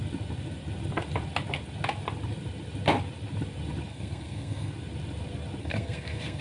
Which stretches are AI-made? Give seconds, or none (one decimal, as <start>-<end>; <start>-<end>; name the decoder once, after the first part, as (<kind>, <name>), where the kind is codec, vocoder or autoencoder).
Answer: 3.9-4.7 (codec, SNAC); 5.6-6.4